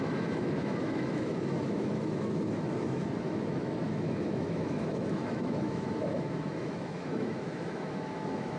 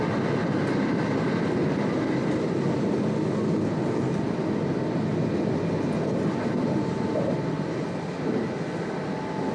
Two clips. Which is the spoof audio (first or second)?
first